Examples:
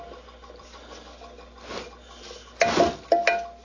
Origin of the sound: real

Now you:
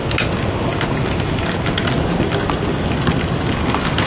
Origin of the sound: real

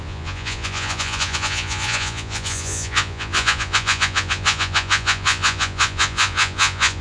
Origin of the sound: fake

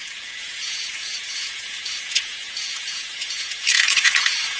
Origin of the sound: fake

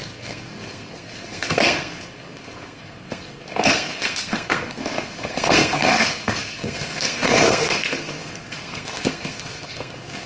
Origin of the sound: fake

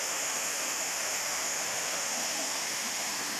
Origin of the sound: fake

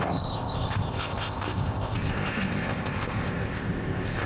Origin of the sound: fake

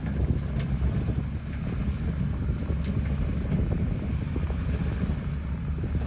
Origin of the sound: real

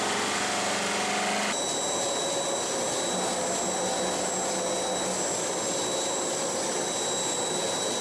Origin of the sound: real